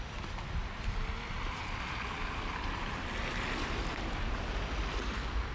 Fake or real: fake